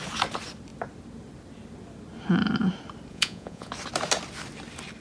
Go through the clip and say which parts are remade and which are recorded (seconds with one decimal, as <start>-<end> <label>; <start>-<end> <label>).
0.0-3.1 recorded; 3.1-3.7 remade; 3.7-5.0 recorded